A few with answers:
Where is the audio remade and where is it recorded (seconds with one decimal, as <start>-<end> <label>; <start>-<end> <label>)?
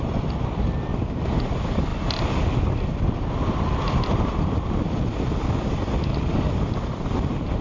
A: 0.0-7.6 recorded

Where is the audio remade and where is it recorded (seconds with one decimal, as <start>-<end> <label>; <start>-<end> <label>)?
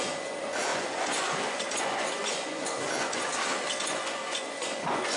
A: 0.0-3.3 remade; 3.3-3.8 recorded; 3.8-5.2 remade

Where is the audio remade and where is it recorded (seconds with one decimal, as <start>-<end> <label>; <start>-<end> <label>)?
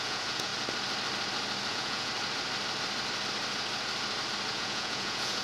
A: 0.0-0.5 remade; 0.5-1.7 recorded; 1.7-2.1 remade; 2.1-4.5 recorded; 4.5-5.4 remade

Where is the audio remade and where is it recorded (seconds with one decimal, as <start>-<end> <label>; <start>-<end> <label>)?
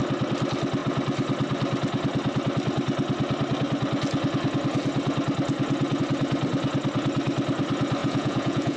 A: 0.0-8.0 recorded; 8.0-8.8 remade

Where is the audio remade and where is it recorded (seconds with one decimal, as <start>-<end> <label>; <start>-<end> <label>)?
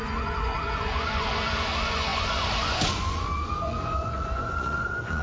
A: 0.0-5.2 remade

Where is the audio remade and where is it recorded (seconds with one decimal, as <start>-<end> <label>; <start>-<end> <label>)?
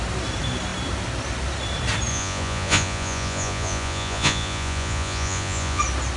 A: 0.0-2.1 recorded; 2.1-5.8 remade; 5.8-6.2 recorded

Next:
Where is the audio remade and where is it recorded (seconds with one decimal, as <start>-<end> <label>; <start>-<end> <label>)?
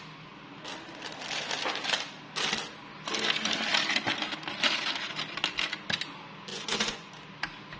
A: 0.0-6.5 recorded; 6.5-7.1 remade; 7.1-7.8 recorded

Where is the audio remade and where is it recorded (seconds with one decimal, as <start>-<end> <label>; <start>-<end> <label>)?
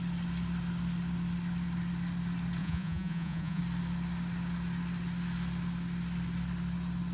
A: 0.0-2.6 recorded; 2.6-3.6 remade; 3.6-7.1 recorded